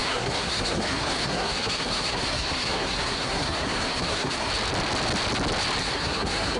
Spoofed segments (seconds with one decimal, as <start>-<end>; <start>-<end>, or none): 0.0-4.5; 5.8-6.6